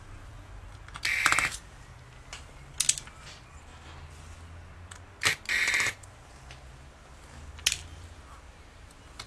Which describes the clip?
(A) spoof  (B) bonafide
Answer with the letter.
B